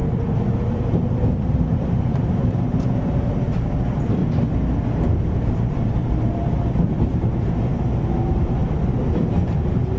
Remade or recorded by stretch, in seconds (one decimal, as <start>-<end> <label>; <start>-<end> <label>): 0.0-4.2 remade; 4.2-5.8 recorded; 5.8-7.7 remade; 7.7-8.2 recorded; 8.2-10.0 remade